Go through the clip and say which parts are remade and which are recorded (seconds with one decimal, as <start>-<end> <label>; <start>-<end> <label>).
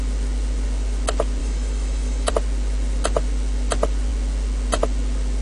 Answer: 0.0-1.4 recorded; 1.4-2.3 remade; 2.3-5.4 recorded